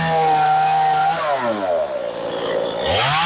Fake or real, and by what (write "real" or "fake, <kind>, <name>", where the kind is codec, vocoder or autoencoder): real